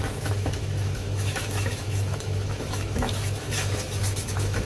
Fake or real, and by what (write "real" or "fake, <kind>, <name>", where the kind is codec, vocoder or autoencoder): fake, autoencoder, DAC-VAE